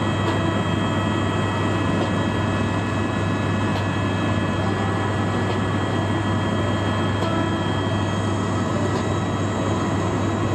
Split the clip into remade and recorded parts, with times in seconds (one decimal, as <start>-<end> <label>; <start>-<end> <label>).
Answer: 0.0-10.5 recorded